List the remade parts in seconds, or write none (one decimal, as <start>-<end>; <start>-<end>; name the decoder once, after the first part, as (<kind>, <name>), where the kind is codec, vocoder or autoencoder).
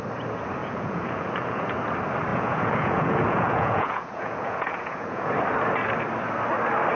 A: 0.6-1.8 (vocoder, Vocos); 2.3-5.3